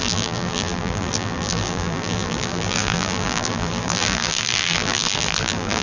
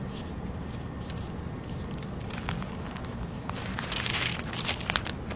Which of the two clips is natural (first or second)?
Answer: second